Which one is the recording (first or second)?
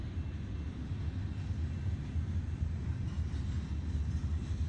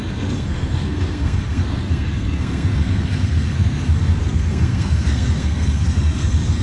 first